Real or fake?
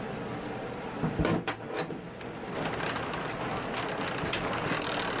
real